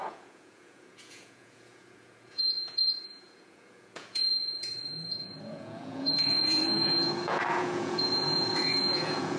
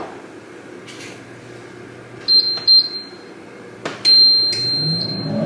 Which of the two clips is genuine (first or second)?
second